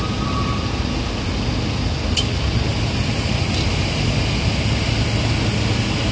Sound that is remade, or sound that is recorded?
recorded